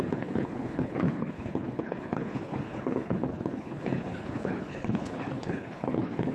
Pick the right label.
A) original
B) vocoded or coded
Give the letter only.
B